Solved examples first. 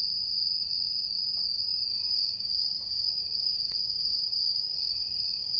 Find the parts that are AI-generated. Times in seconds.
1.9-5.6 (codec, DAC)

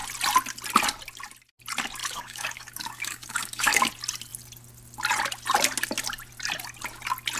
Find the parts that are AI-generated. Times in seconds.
2.0-3.9 (codec, DAC)

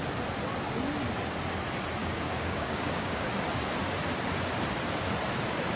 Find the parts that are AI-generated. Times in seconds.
2.0-3.3 (codec, DAC)